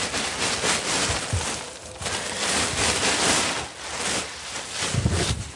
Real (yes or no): yes